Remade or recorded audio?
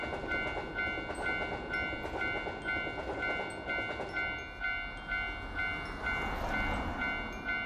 recorded